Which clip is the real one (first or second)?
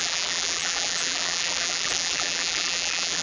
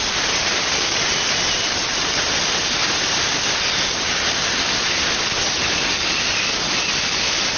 second